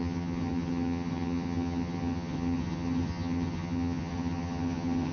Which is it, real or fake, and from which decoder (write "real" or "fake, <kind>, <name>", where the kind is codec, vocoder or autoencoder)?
fake, vocoder, HiFi-GAN